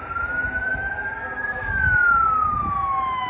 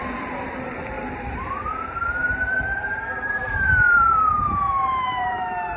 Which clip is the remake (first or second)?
second